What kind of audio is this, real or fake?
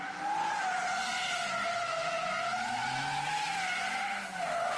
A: real